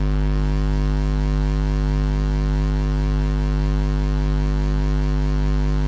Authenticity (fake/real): real